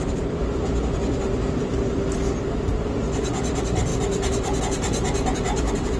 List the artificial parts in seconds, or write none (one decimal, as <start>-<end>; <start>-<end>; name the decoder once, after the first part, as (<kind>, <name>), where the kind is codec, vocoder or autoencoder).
0.0-6.0 (vocoder, BigVGAN v2)